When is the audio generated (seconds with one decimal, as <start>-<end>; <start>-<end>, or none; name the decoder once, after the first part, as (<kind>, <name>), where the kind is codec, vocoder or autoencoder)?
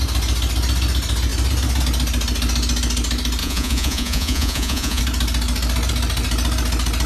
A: 3.4-5.0 (vocoder, Vocos)